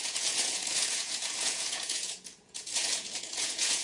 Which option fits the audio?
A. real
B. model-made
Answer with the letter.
B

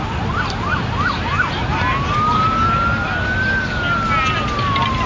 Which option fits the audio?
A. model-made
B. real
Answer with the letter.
B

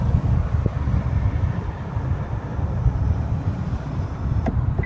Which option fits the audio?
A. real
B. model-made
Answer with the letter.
B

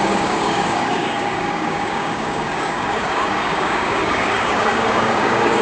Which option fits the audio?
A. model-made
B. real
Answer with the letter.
A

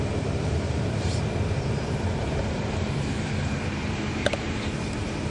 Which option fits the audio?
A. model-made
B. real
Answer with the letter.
A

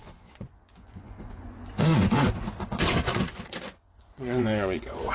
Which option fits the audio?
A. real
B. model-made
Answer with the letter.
B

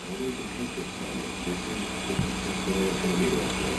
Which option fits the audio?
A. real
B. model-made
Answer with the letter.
B